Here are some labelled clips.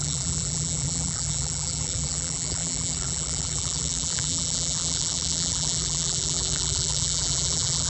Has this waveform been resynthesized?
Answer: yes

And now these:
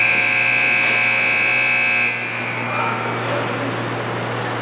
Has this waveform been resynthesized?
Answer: no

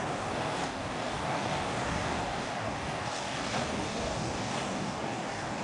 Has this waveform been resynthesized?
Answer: yes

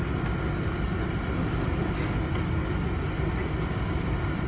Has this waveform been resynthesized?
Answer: no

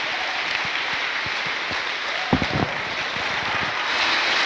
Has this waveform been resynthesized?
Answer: no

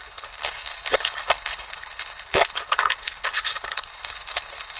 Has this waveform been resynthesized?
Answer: yes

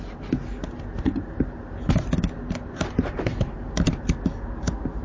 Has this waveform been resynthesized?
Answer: no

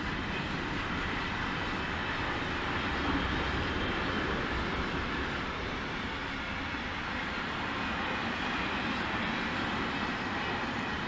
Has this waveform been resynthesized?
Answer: no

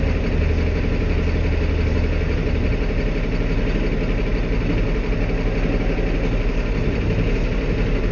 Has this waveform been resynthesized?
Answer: no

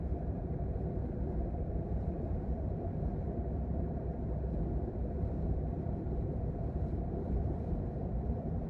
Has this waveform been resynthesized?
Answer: yes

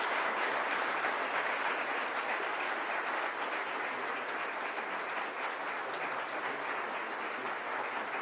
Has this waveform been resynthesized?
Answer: no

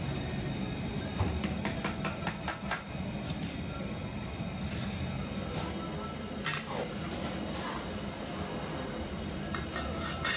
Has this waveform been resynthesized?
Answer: no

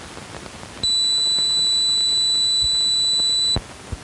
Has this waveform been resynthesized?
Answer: no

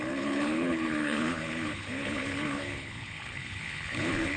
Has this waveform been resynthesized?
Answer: yes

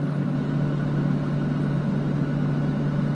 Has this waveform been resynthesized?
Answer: no